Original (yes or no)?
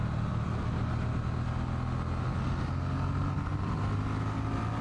yes